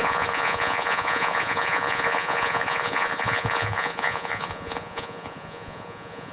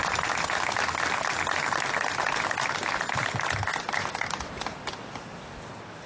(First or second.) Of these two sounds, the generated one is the first